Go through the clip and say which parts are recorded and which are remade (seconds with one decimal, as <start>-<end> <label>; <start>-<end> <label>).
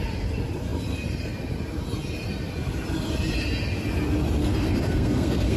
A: 0.0-4.4 recorded; 4.4-5.6 remade